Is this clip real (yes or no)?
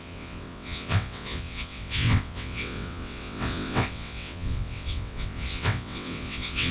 no